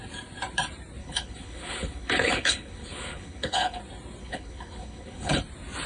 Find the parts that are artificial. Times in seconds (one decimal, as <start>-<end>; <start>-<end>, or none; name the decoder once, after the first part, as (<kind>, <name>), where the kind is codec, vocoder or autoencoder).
1.0-3.8 (codec, HILCodec); 4.2-5.4